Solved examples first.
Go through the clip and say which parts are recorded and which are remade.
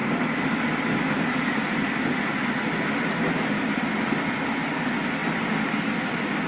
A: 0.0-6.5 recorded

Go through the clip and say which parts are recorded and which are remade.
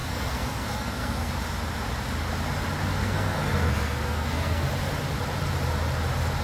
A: 0.0-1.3 remade; 1.3-3.0 recorded; 3.0-4.7 remade; 4.7-6.4 recorded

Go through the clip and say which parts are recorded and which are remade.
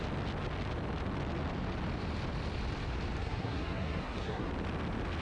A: 0.0-3.2 recorded; 3.2-4.5 remade; 4.5-5.2 recorded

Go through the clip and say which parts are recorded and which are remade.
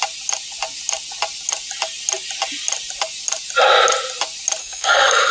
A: 0.0-4.6 recorded; 4.6-5.3 remade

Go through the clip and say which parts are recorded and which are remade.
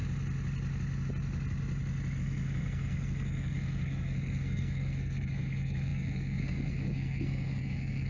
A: 0.0-2.2 recorded; 2.2-8.1 remade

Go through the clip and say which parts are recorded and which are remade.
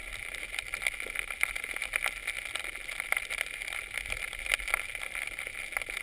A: 0.0-6.0 recorded